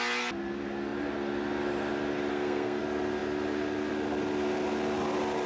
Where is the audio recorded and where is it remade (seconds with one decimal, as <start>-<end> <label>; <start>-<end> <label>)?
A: 0.0-2.3 recorded; 2.3-2.8 remade; 2.8-5.5 recorded